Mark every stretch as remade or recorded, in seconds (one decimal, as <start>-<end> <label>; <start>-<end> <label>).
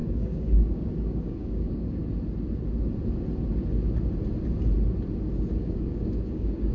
0.0-2.0 remade; 2.0-5.5 recorded; 5.5-6.7 remade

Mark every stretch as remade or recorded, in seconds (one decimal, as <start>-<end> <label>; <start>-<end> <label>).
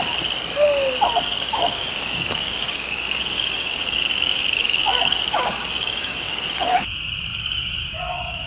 0.0-1.3 recorded; 1.3-6.4 remade; 6.4-7.3 recorded; 7.3-8.5 remade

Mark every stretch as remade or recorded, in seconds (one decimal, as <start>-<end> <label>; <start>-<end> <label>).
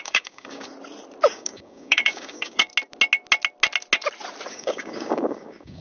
0.0-0.7 remade; 0.7-1.3 recorded; 1.3-2.7 remade; 2.7-4.5 recorded; 4.5-5.8 remade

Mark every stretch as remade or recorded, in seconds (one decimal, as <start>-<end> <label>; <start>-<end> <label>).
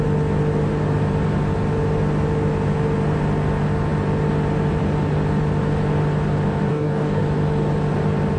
0.0-6.7 recorded; 6.7-7.2 remade; 7.2-8.4 recorded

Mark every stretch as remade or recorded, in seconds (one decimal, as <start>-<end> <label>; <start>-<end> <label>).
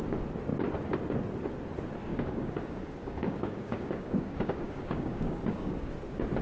0.0-2.1 recorded; 2.1-5.9 remade; 5.9-6.4 recorded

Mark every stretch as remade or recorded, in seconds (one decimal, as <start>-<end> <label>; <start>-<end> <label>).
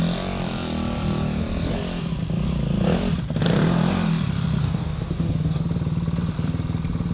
0.0-4.6 recorded; 4.6-5.6 remade; 5.6-7.1 recorded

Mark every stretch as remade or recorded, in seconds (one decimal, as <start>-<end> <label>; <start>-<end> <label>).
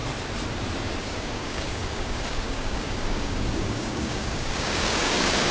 0.0-1.0 recorded; 1.0-5.5 remade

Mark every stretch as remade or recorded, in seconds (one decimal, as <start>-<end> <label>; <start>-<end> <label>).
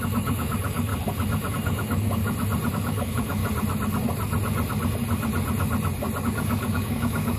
0.0-0.9 remade; 0.9-1.5 recorded; 1.5-2.2 remade; 2.2-2.7 recorded; 2.7-3.4 remade; 3.4-6.2 recorded; 6.2-7.4 remade